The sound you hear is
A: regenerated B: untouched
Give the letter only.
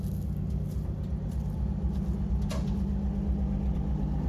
B